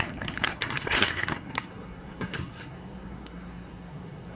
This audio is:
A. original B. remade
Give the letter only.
B